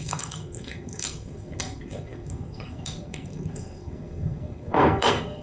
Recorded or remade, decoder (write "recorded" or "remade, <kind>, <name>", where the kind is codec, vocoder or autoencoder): remade, codec, SNAC